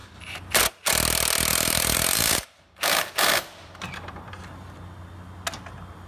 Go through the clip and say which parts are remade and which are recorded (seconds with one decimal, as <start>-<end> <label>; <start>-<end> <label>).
0.0-0.6 remade; 0.6-1.5 recorded; 1.5-4.7 remade; 4.7-6.1 recorded